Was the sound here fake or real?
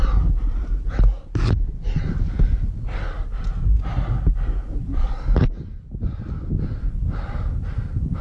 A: real